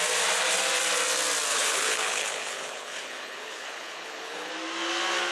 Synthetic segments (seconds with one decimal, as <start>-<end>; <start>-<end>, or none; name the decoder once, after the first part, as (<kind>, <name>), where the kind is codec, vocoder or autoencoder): 1.5-4.5 (codec, HILCodec)